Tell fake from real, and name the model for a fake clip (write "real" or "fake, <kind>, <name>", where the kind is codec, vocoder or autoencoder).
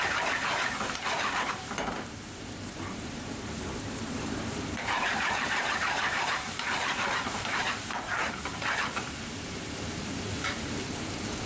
fake, vocoder, BigVGAN v2